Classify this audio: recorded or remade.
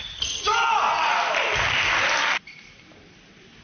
recorded